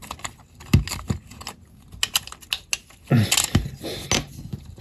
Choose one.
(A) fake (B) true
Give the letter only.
B